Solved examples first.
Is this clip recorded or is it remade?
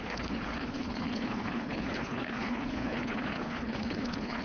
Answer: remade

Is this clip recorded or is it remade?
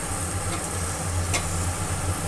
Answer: recorded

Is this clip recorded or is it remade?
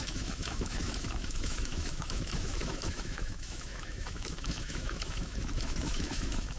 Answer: remade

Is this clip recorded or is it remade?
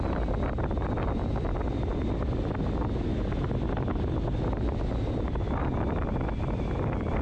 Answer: recorded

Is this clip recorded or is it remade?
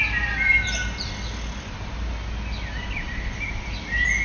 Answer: recorded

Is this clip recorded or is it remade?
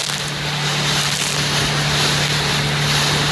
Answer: recorded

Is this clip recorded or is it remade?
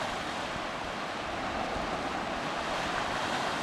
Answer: recorded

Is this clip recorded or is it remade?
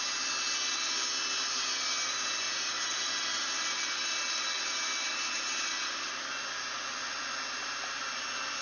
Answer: recorded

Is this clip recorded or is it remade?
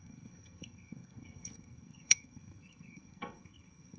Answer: remade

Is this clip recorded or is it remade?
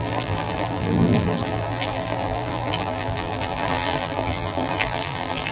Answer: remade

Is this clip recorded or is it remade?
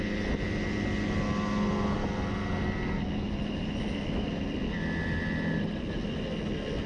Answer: recorded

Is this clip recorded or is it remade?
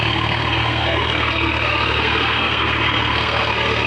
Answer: remade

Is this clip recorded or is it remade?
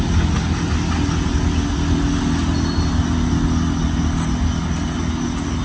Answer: recorded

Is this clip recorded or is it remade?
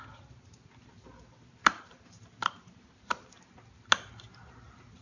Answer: recorded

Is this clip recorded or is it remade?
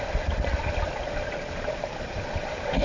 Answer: recorded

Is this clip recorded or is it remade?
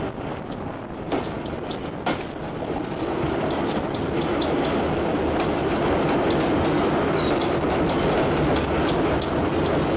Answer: recorded